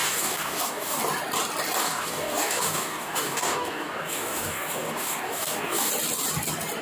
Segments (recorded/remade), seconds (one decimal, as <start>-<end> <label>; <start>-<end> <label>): 0.0-1.0 remade; 1.0-1.8 recorded; 1.8-5.9 remade; 5.9-6.8 recorded